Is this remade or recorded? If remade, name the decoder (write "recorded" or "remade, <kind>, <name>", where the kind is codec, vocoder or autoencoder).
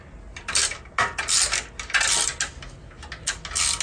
recorded